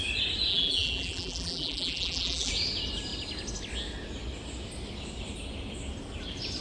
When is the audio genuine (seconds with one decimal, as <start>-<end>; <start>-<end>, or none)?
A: 0.0-0.5; 2.5-6.6